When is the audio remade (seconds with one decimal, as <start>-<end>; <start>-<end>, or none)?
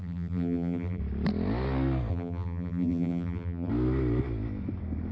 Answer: 0.0-1.0; 2.1-3.7